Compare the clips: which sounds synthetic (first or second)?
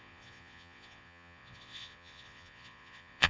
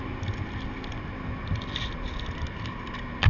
first